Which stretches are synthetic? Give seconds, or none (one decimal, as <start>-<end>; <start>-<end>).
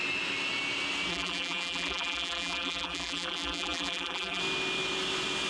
1.1-4.4